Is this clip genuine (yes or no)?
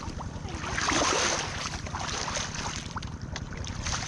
yes